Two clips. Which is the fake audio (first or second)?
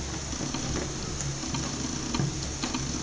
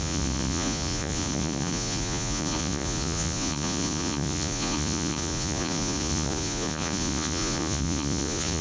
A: second